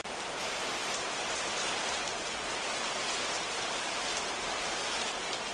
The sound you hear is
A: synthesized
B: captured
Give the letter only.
A